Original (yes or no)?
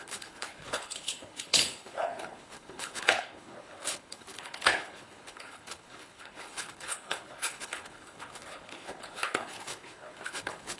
no